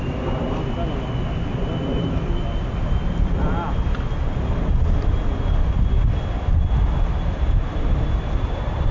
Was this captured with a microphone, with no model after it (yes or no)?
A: yes